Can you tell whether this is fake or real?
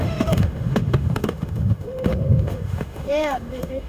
fake